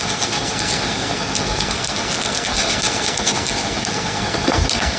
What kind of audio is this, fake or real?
fake